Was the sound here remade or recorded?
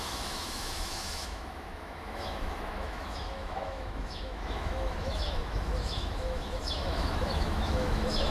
remade